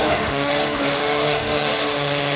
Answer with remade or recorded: remade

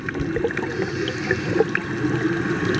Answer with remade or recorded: recorded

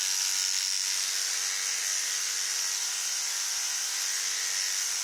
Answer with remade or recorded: recorded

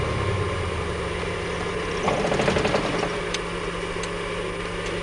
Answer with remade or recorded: recorded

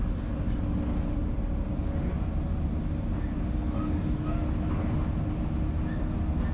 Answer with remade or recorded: recorded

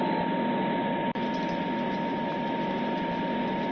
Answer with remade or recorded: recorded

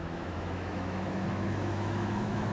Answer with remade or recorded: remade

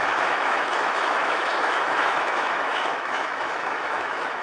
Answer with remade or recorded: remade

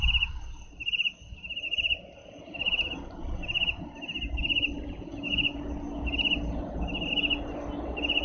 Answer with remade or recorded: recorded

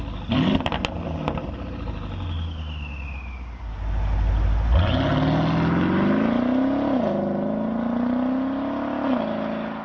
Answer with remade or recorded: recorded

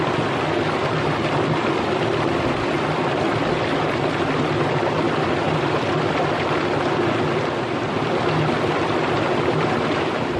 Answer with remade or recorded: recorded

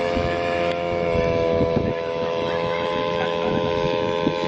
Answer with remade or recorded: remade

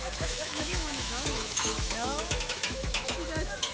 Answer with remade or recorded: remade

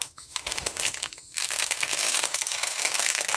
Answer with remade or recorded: remade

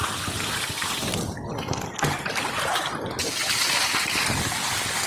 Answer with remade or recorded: recorded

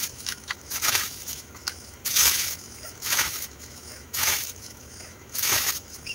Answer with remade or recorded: remade